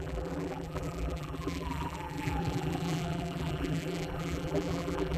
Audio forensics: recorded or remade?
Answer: remade